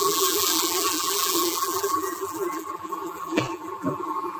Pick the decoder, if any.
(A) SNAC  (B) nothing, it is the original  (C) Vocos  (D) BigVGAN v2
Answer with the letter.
D